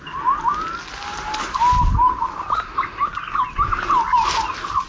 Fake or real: real